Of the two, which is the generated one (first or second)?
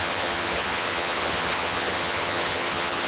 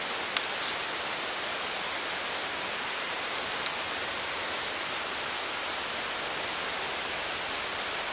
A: first